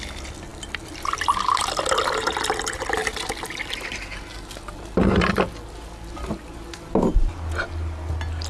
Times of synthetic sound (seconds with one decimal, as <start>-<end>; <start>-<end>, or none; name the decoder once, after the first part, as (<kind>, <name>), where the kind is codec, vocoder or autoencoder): none